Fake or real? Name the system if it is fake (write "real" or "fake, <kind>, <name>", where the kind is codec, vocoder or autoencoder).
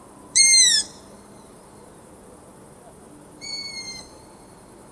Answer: fake, vocoder, BigVGAN v2